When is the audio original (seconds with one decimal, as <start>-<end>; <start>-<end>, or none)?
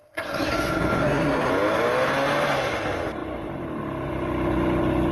0.5-1.0; 1.5-5.1